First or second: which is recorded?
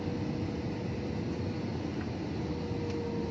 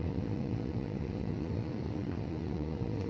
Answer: first